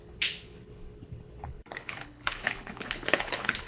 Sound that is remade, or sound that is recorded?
remade